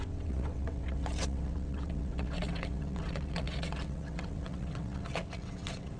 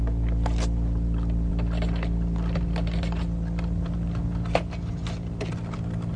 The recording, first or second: second